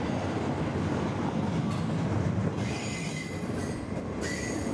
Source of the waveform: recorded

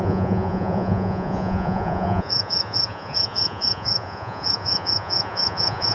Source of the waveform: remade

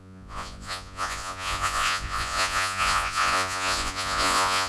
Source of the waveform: remade